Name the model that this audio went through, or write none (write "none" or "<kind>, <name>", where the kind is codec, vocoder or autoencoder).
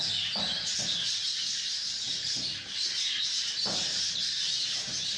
none